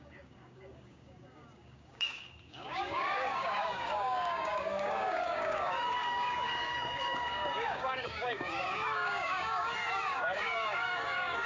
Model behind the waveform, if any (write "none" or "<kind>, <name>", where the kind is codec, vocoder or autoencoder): codec, DAC